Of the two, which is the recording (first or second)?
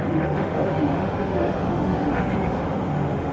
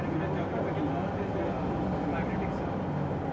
second